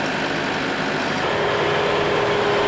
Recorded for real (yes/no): yes